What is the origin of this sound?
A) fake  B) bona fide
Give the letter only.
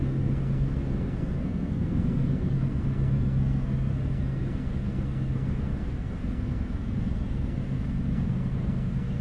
A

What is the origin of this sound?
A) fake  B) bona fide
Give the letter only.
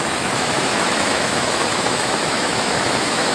A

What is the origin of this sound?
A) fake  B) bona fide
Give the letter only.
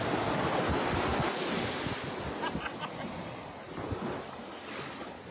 A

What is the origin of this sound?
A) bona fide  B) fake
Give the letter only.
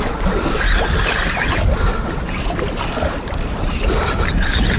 A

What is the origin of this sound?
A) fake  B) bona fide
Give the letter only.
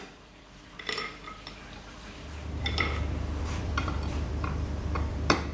A